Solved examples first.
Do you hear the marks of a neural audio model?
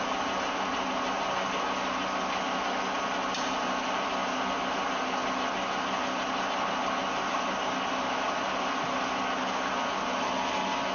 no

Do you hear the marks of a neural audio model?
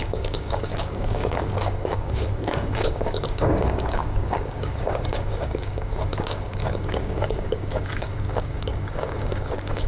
yes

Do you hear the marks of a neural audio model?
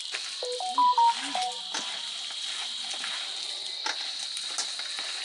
no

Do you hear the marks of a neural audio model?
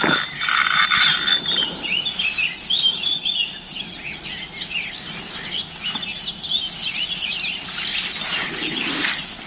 no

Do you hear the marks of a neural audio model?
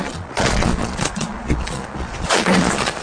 yes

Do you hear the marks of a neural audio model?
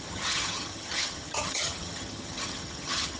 yes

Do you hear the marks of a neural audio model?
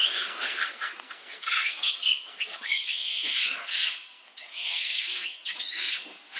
yes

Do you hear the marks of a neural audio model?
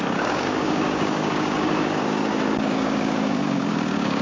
yes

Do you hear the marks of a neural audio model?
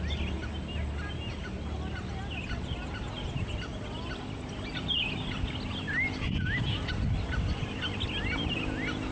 no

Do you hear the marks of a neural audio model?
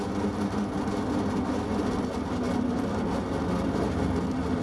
no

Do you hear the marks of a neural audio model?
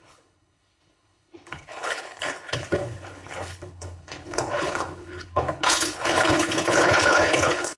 yes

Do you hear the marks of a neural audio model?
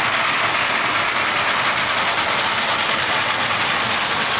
no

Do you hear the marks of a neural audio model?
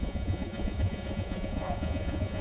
yes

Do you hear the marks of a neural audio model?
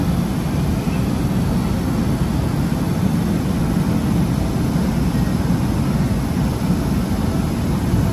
no